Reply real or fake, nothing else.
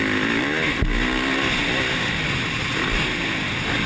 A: real